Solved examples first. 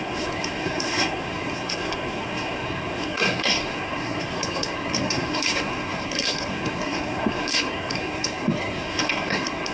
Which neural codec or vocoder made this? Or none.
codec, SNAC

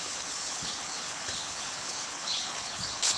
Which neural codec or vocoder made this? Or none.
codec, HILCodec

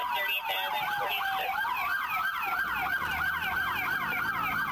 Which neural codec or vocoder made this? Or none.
none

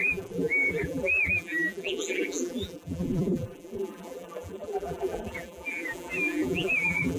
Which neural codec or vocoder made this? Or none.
vocoder, BigVGAN v2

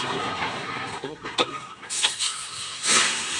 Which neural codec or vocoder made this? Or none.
codec, SNAC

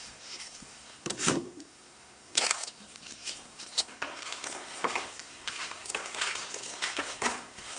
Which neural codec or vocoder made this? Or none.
codec, SNAC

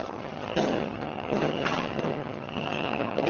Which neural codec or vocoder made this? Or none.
vocoder, HiFi-GAN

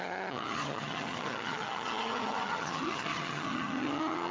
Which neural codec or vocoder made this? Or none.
vocoder, HiFi-GAN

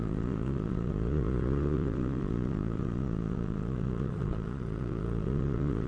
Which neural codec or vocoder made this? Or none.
vocoder, Vocos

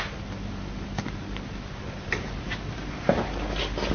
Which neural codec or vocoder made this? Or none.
none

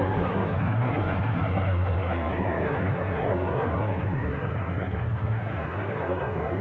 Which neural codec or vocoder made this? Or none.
codec, SNAC